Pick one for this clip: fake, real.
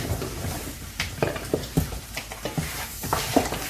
fake